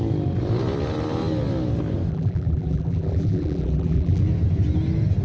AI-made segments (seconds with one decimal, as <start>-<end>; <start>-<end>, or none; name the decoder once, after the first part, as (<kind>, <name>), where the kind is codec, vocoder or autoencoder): 2.1-4.2 (vocoder, BigVGAN v2)